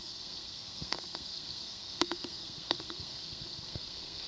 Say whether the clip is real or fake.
fake